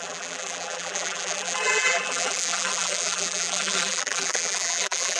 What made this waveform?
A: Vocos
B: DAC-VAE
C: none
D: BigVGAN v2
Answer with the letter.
D